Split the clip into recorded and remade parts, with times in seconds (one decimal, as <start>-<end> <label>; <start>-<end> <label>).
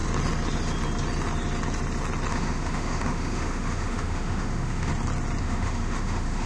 0.0-2.3 recorded; 2.3-4.9 remade; 4.9-5.4 recorded; 5.4-6.5 remade